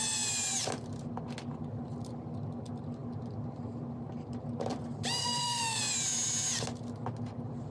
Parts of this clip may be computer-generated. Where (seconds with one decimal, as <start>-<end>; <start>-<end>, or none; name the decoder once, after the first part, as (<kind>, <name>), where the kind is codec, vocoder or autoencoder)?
5.2-5.8 (codec, SNAC)